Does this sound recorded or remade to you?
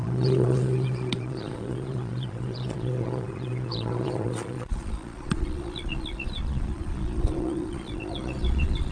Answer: remade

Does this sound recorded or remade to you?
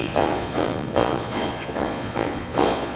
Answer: remade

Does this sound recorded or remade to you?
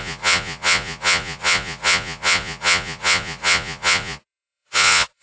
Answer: remade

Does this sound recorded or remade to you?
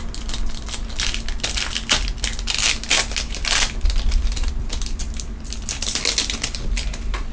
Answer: recorded